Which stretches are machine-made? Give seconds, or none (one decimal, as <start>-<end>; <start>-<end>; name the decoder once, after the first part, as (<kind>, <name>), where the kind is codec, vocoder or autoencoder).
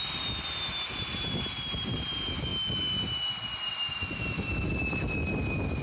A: none